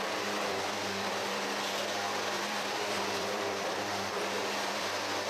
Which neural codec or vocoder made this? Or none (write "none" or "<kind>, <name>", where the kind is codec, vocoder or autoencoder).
vocoder, BigVGAN v2